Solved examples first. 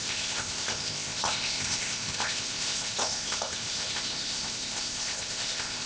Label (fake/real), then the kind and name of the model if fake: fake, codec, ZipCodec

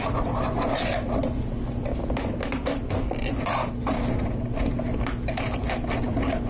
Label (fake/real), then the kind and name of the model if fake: real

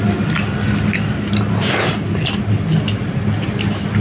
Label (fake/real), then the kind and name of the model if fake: real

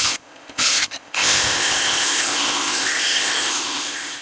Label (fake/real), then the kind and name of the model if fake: fake, codec, ZipCodec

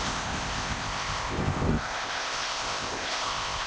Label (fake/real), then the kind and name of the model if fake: fake, codec, ZipCodec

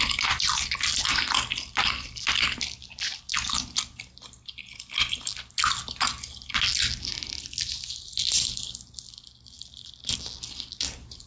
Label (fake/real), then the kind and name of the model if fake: real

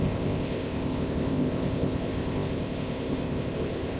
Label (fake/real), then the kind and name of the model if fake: fake, codec, ZipCodec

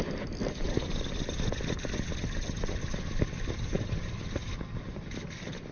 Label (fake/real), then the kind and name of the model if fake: real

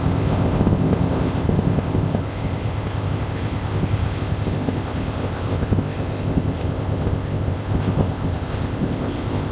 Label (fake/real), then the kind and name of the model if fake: fake, codec, ZipCodec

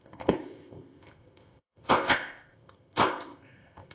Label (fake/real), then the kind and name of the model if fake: fake, codec, ZipCodec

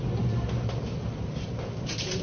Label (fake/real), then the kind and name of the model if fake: real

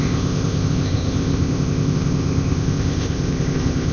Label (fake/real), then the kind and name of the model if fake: fake, codec, ZipCodec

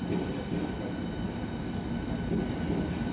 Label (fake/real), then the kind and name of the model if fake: real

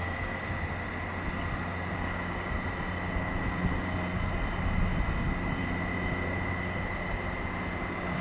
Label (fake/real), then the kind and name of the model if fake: real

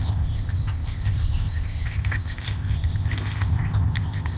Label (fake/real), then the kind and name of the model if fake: fake, codec, ZipCodec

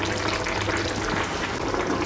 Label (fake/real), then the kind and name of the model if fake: real